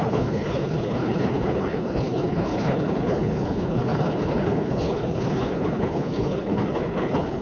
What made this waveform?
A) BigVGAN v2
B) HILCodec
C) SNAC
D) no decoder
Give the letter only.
B